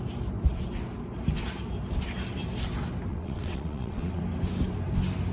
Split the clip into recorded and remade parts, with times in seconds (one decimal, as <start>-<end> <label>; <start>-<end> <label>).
0.0-3.1 recorded; 3.1-4.2 remade; 4.2-5.3 recorded